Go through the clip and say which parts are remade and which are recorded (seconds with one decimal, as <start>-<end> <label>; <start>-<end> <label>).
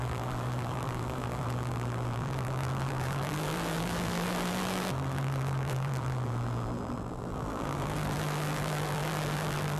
0.0-9.8 remade